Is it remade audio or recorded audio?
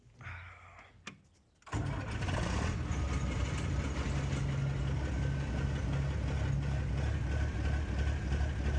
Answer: recorded